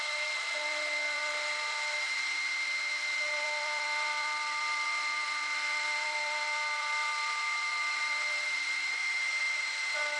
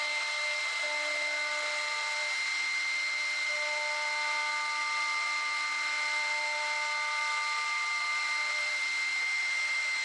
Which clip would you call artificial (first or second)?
first